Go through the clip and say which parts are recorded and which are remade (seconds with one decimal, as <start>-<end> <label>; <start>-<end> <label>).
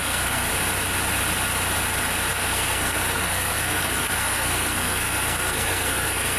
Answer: 0.0-0.5 remade; 0.5-2.3 recorded; 2.3-6.4 remade